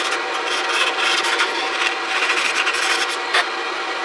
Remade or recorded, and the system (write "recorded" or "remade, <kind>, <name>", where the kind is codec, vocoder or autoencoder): recorded